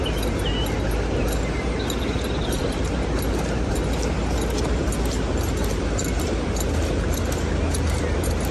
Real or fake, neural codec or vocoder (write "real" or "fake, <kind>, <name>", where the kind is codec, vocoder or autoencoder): real